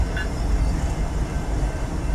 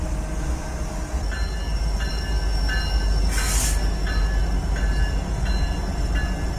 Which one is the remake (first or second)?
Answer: first